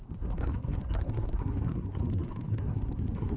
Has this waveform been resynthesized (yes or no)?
yes